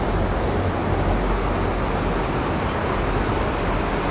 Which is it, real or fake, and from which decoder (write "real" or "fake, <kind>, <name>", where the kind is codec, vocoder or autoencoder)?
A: real